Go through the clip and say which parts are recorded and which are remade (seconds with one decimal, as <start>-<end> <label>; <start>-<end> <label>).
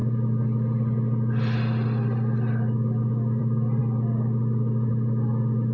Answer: 0.0-5.7 recorded